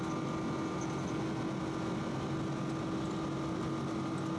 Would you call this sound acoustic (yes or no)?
yes